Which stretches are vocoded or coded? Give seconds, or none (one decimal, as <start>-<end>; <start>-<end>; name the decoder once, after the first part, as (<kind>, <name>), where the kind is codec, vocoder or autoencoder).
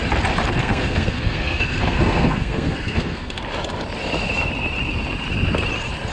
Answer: 0.6-3.4 (codec, SNAC)